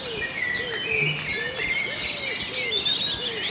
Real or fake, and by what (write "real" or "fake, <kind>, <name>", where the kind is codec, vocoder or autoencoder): real